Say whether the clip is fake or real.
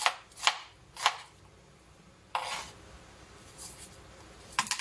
fake